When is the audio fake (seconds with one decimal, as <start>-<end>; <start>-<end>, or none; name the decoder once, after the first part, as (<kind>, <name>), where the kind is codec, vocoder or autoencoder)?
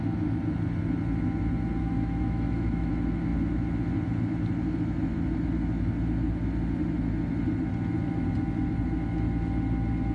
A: 1.8-2.9 (autoencoder, DAC-VAE)